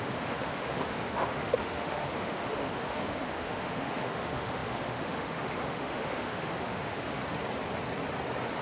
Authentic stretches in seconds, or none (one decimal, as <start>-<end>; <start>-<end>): 7.2-8.6